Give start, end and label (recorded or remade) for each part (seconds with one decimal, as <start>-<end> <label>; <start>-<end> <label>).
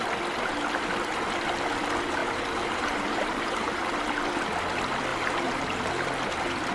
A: 0.0-2.2 recorded; 2.2-4.1 remade; 4.1-5.1 recorded; 5.1-5.9 remade; 5.9-6.7 recorded